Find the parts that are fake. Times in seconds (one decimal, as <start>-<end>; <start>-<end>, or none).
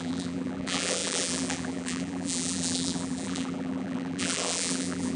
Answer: 0.0-5.2